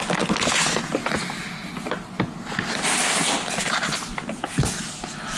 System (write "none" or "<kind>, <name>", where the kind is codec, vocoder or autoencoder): none